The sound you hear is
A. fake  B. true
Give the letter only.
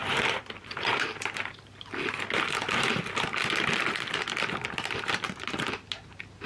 B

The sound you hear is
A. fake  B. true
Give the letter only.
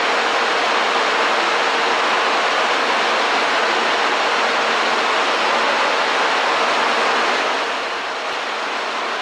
B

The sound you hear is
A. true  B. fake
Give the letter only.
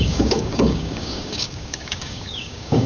B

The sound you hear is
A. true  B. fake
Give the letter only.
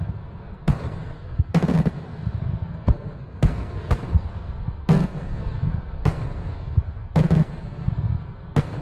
B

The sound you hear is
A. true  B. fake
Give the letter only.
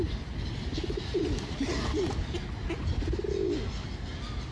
A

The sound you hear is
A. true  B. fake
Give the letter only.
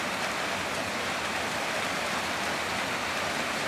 A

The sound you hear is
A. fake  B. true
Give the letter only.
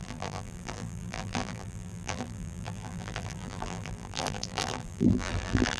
A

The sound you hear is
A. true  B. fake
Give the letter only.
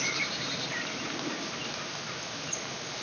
A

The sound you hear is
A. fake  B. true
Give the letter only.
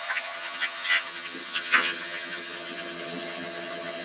A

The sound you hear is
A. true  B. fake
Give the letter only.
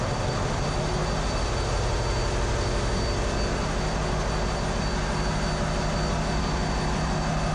A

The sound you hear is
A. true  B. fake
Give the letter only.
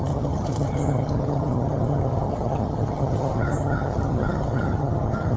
B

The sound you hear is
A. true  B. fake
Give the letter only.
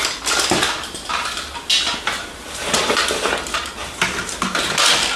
A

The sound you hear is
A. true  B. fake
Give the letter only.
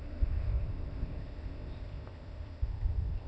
B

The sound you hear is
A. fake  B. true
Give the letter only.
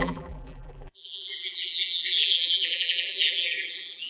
A